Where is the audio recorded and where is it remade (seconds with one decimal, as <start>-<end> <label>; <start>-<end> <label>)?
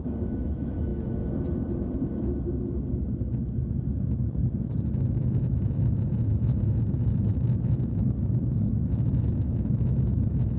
0.0-6.3 recorded; 6.3-10.2 remade; 10.2-10.6 recorded